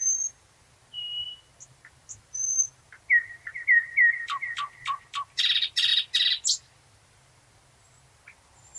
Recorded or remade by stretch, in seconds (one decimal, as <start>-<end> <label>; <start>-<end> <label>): 0.0-8.8 recorded

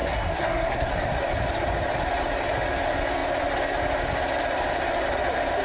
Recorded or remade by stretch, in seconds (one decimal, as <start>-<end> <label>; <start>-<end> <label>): 0.0-0.9 remade; 0.9-5.6 recorded

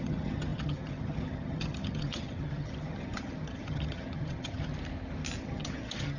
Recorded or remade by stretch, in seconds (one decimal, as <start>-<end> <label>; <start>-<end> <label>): 0.0-4.7 remade; 4.7-5.4 recorded; 5.4-6.2 remade

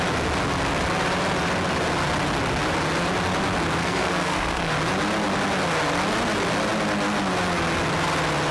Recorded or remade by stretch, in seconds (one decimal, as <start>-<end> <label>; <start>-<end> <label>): 0.0-3.8 recorded; 3.8-4.7 remade; 4.7-8.5 recorded

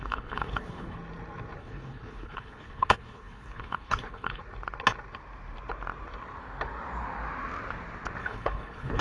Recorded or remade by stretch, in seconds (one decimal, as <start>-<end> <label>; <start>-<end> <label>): 0.0-1.0 remade; 1.0-1.6 recorded; 1.6-4.4 remade; 4.4-8.2 recorded; 8.2-9.0 remade

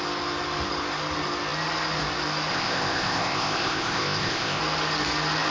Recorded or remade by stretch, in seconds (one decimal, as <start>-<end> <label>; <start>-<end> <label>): 0.0-2.5 recorded; 2.5-4.6 remade; 4.6-5.5 recorded

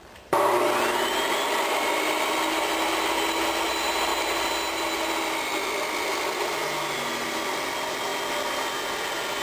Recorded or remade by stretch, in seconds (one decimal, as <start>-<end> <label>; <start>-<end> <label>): 0.0-4.1 remade; 4.1-7.1 recorded; 7.1-9.4 remade